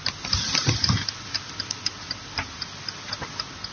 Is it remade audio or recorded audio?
recorded